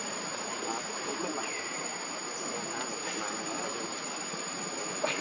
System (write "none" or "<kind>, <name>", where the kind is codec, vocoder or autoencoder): none